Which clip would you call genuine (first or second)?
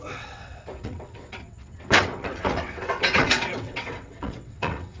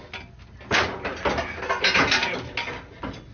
second